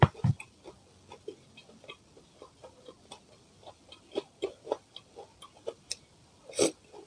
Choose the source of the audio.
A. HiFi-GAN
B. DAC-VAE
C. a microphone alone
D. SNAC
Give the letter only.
C